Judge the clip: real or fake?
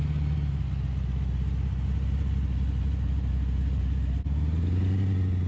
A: real